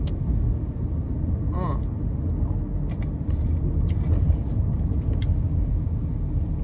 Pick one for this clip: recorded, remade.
recorded